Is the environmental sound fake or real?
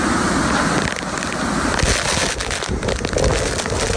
real